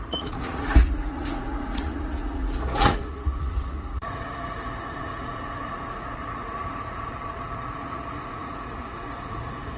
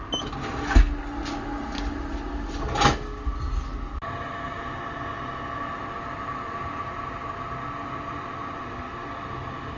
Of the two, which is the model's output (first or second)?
first